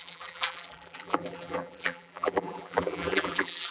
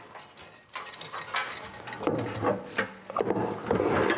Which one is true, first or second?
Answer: second